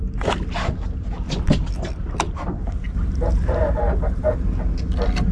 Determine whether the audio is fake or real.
real